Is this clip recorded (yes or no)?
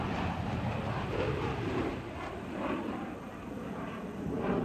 no